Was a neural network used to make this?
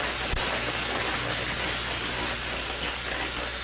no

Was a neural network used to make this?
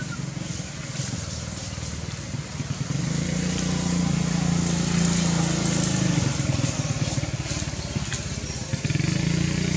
no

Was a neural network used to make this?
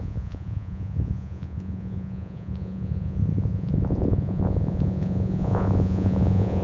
yes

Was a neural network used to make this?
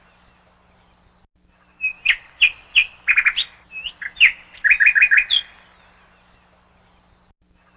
no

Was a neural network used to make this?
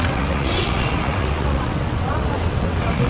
yes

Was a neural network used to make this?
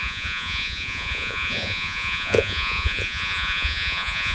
yes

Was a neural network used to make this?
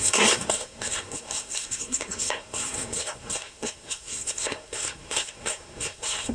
yes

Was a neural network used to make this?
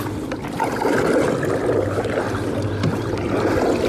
no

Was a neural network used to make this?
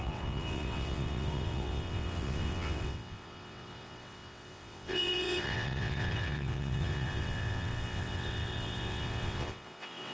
yes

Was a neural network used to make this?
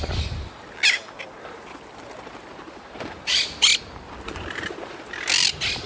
no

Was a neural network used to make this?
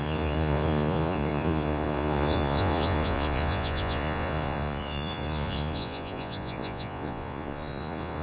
yes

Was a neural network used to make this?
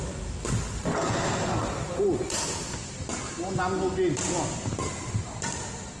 no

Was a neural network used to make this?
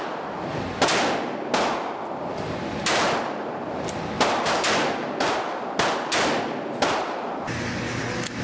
no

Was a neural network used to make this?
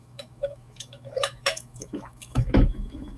yes